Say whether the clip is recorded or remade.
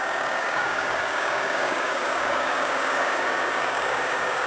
remade